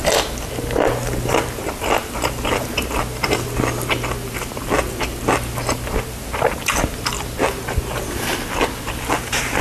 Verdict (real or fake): real